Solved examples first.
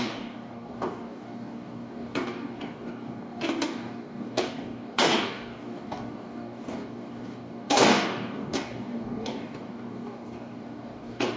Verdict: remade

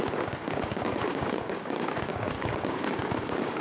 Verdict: remade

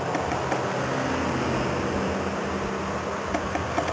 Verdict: recorded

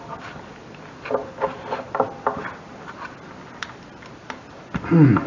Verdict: recorded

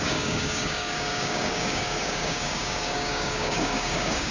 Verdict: remade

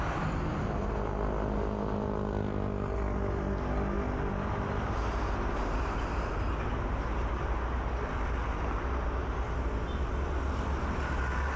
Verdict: recorded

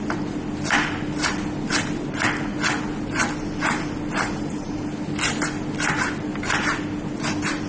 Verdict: recorded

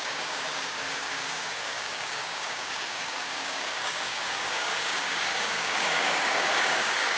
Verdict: remade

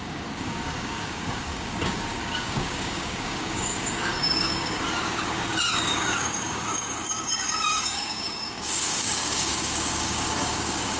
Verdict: remade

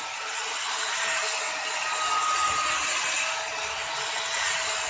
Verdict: recorded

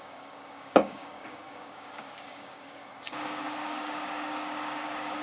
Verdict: remade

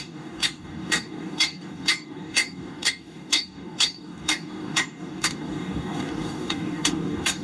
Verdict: remade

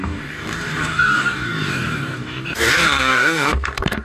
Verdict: remade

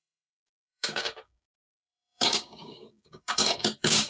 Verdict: remade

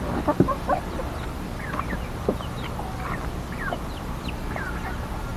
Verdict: recorded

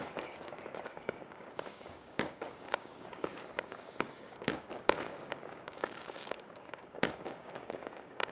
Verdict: remade